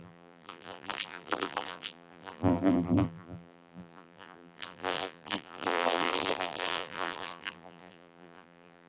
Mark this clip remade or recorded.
remade